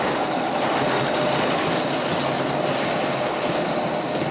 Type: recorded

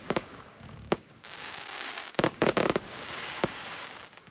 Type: remade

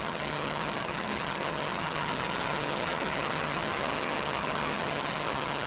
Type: remade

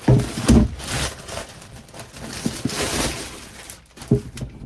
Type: recorded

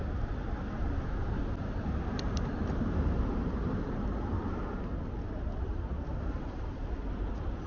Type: recorded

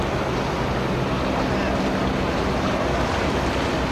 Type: recorded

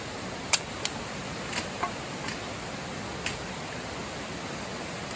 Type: recorded